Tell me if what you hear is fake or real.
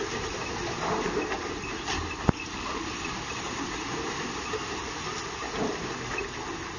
real